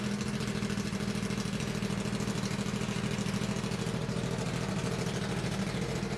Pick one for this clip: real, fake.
real